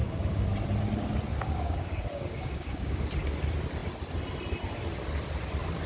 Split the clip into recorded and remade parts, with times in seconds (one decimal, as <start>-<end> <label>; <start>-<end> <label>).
0.0-0.5 remade; 0.5-1.3 recorded; 1.3-3.0 remade; 3.0-5.9 recorded